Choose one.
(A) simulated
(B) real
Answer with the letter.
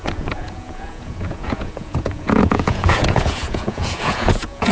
A